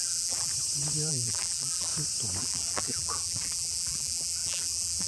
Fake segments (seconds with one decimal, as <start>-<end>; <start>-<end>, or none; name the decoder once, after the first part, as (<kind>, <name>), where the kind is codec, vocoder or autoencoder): 0.0-0.5 (vocoder, BigVGAN v2); 1.1-1.9; 2.4-5.1